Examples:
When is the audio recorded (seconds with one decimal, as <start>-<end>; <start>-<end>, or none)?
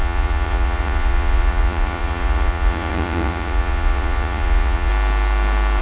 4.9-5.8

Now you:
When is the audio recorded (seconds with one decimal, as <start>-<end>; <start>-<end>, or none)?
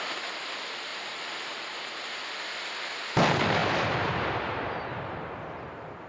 0.0-0.9; 2.2-3.6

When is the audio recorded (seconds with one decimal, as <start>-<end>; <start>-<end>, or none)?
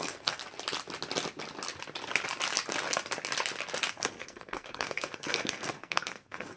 0.4-3.9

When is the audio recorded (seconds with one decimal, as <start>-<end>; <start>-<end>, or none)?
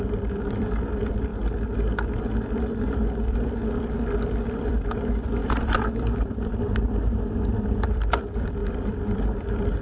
1.3-2.8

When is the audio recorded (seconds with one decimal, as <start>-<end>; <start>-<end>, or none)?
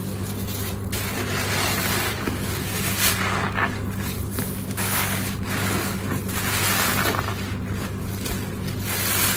0.0-2.1; 6.1-7.3; 8.1-9.4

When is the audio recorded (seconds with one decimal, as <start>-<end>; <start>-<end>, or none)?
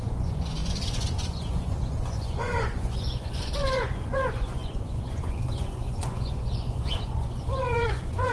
none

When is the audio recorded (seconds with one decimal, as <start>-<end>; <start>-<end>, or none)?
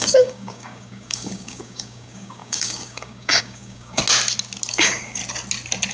4.0-4.7; 5.2-5.9